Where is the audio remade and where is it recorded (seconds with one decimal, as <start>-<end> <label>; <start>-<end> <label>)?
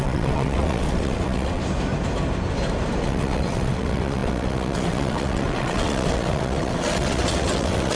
0.0-1.6 remade; 1.6-3.0 recorded; 3.0-8.0 remade